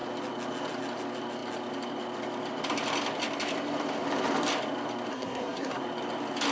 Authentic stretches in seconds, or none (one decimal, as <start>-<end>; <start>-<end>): 0.0-5.1; 5.8-6.5